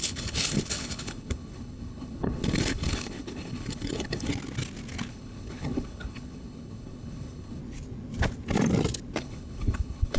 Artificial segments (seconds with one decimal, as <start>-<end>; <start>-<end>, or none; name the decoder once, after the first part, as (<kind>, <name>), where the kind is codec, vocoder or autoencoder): 0.0-4.3 (codec, HILCodec); 5.1-7.6; 9.2-10.2